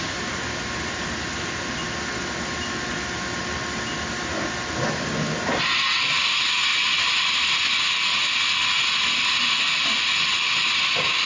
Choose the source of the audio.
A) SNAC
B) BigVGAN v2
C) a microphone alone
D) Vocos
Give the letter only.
C